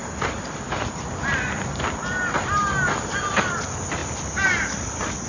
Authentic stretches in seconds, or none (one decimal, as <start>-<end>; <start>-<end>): 0.0-5.3